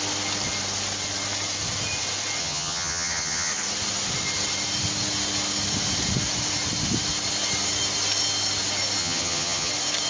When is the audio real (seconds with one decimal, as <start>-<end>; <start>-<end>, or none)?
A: 0.0-2.4; 3.5-9.0; 9.7-10.1